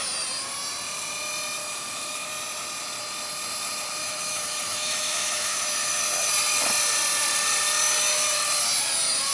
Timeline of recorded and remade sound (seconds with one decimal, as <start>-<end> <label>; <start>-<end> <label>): 0.0-1.6 recorded; 1.6-2.3 remade; 2.3-4.0 recorded; 4.0-6.0 remade; 6.0-9.3 recorded

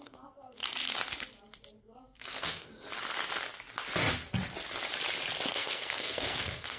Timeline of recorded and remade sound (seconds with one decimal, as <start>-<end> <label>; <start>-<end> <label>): 0.0-0.6 remade; 0.6-1.8 recorded; 1.8-2.7 remade; 2.7-5.5 recorded; 5.5-6.8 remade

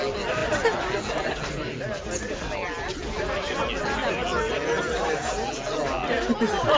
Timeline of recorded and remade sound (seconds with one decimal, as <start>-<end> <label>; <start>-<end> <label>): 0.0-6.8 recorded

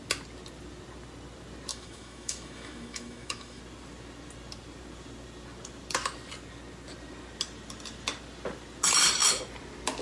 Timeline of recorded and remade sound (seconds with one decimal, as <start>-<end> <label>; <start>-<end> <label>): 0.0-1.7 recorded; 1.7-3.6 remade; 3.6-10.0 recorded

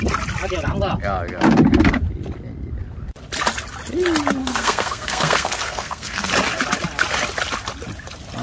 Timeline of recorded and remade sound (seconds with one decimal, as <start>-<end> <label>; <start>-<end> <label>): 0.0-4.4 recorded; 4.4-6.3 remade; 6.3-8.4 recorded

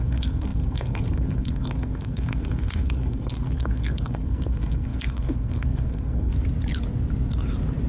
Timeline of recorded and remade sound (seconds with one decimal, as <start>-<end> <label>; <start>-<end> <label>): 0.0-6.3 remade; 6.3-7.9 recorded